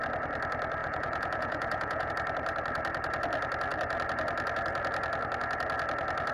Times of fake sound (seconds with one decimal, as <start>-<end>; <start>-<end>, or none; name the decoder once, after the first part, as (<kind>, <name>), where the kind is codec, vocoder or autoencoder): 0.8-2.1 (vocoder, Vocos)